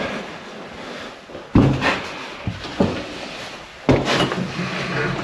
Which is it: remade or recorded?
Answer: recorded